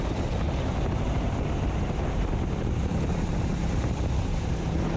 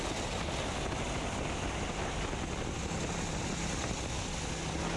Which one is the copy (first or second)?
first